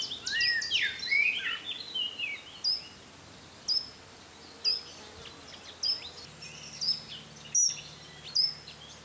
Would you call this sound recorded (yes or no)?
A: yes